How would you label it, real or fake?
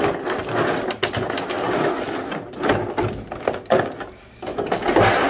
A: real